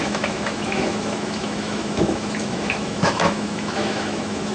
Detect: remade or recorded remade